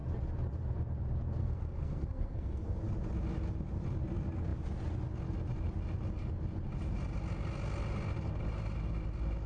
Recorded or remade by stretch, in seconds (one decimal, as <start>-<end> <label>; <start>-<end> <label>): 0.0-1.4 recorded; 1.4-2.8 remade; 2.8-9.5 recorded

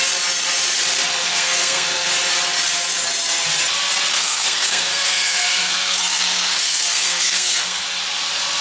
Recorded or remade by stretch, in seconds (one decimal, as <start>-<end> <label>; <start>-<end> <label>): 0.0-1.2 recorded; 1.2-2.1 remade; 2.1-4.1 recorded; 4.1-7.8 remade; 7.8-8.6 recorded

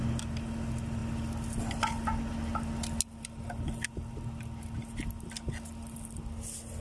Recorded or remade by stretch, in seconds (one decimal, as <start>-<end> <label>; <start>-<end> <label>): 0.0-6.8 recorded

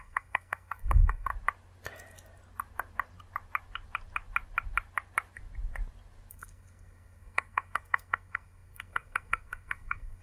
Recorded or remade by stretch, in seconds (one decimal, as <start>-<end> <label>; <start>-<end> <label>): 0.0-1.3 remade; 1.3-6.3 recorded; 6.3-10.2 remade

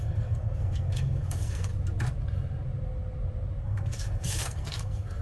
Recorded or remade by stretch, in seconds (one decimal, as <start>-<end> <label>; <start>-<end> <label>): 0.0-1.7 remade; 1.7-3.6 recorded; 3.6-5.2 remade

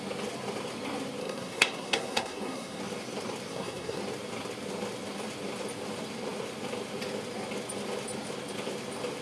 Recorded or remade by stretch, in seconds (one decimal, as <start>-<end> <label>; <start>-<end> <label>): 0.0-1.2 recorded; 1.2-2.8 remade; 2.8-3.5 recorded; 3.5-4.0 remade; 4.0-9.2 recorded